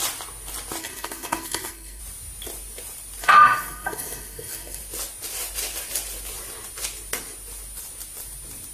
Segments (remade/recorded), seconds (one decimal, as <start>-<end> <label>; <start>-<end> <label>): 0.0-0.8 recorded; 0.8-2.0 remade; 2.0-3.2 recorded; 3.2-4.8 remade; 4.8-8.7 recorded